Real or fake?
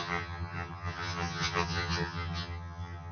fake